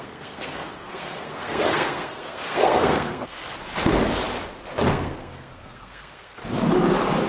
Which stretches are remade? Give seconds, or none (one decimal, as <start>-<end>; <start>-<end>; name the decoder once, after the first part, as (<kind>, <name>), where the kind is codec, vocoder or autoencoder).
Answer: 0.0-3.4 (codec, SNAC); 4.9-6.4

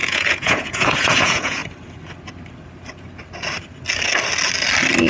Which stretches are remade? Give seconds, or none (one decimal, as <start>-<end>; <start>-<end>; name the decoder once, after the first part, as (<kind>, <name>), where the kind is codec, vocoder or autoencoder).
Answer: 0.0-1.6 (vocoder, Vocos)

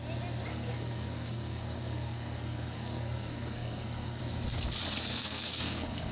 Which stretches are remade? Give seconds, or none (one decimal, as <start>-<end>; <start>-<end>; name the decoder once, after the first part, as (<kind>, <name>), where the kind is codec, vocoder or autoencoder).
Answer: 0.5-4.2 (codec, SNAC); 5.1-6.1

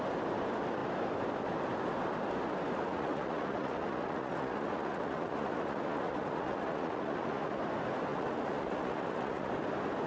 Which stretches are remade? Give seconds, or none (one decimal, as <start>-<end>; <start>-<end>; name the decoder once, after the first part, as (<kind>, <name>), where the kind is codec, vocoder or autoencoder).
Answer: 2.9-7.6 (vocoder, Vocos); 8.1-9.5